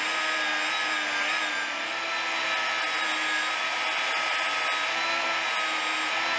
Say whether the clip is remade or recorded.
recorded